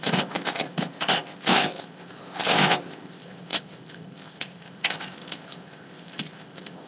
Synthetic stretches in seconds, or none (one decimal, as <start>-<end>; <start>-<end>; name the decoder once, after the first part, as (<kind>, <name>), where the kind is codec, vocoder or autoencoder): 0.0-6.9 (codec, ZipCodec)